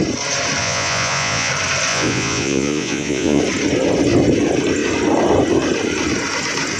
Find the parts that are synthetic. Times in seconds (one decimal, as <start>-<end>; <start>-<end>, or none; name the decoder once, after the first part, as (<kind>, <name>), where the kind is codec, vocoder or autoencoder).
0.6-1.5 (vocoder, Vocos); 1.9-3.4